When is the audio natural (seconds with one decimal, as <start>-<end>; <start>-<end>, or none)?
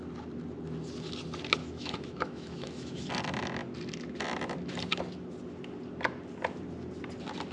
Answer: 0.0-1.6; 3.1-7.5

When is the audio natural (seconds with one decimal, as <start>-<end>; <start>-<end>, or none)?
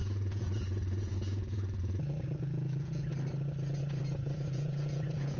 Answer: 3.1-3.8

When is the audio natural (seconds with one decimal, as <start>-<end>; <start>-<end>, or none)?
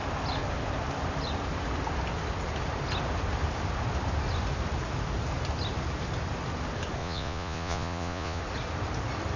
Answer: 0.0-7.0; 8.4-9.4